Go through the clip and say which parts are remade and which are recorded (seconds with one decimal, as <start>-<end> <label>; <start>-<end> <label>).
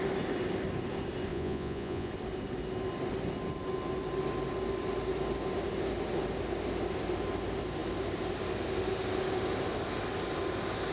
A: 0.0-1.3 recorded; 1.3-2.1 remade; 2.1-10.9 recorded